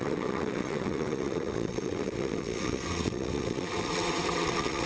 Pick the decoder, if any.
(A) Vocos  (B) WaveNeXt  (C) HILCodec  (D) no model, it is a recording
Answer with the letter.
B